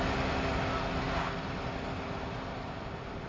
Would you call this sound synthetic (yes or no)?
no